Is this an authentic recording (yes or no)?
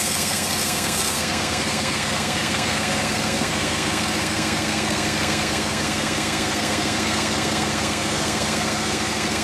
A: no